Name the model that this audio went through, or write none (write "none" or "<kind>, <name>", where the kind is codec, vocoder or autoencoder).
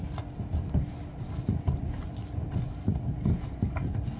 none